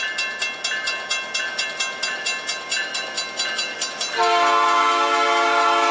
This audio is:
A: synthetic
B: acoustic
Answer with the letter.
B